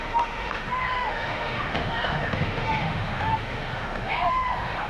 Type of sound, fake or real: fake